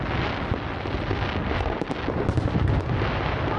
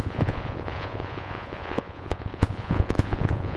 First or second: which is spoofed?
second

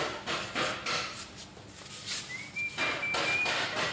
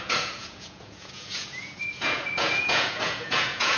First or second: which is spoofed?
second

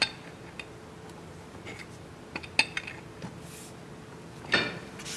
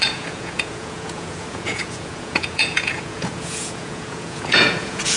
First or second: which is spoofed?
second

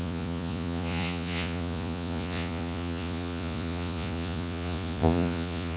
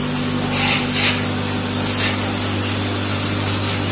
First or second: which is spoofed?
first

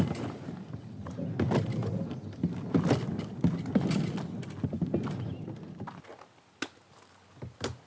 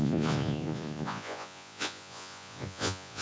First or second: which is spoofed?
second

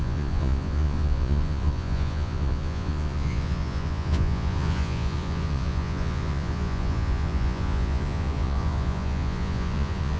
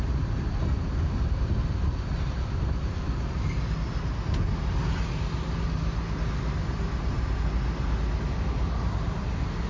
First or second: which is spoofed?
first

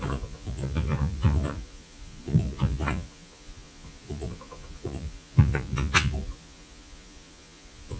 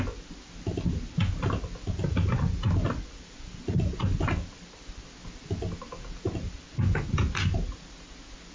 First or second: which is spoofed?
first